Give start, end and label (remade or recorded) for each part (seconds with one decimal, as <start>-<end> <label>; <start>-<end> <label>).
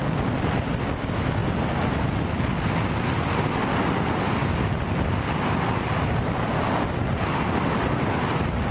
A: 0.0-8.7 recorded